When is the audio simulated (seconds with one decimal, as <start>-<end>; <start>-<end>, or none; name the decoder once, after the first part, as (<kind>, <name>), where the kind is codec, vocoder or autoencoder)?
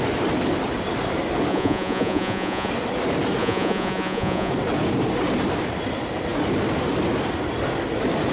1.5-2.7 (vocoder, Vocos); 3.4-4.5